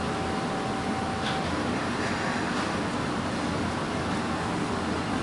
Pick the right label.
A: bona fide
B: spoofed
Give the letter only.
A